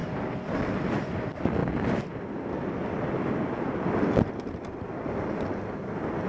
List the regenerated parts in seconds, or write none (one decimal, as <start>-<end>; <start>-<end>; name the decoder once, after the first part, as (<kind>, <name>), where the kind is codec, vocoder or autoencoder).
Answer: none